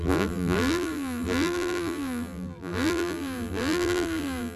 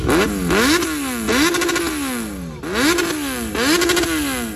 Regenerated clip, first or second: first